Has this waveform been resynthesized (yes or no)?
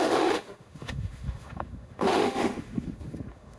yes